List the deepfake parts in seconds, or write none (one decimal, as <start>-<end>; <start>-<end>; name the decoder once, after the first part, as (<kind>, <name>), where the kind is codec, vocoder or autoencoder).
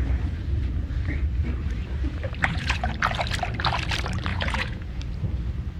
2.4-2.9 (vocoder, Vocos); 4.3-5.0